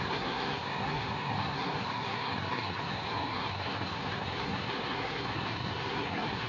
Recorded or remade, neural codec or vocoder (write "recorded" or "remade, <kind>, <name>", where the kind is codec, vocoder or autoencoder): remade, codec, SNAC